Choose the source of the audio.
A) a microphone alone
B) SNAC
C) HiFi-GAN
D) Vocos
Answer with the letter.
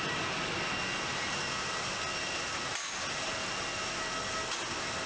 A